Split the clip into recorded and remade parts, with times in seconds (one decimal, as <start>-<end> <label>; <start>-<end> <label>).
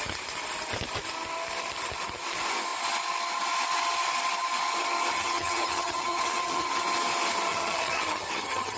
0.0-5.1 recorded; 5.1-6.8 remade; 6.8-7.5 recorded; 7.5-8.8 remade